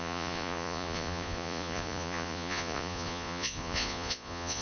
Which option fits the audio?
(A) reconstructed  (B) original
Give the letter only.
A